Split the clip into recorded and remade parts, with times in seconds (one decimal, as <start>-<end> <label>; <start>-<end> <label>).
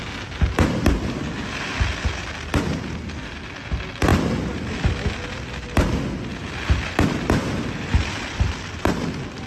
0.0-4.1 recorded; 4.1-4.9 remade; 4.9-6.3 recorded; 6.3-9.5 remade